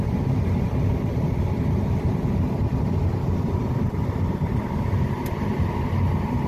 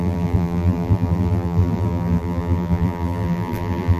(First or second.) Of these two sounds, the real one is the first